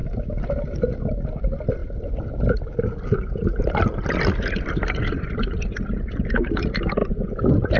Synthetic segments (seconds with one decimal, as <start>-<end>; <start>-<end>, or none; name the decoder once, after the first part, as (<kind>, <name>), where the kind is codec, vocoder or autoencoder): none